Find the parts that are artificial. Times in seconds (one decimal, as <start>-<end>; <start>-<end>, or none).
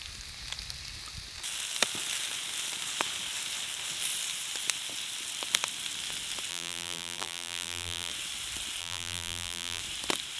6.5-8.1; 8.8-9.8